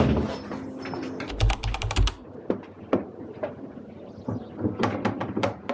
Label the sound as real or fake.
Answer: real